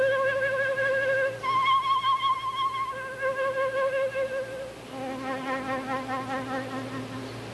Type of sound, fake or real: real